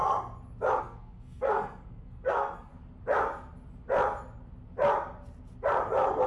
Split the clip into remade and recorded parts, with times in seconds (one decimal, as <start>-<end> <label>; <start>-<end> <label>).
0.0-0.8 recorded; 0.8-2.7 remade; 2.7-6.3 recorded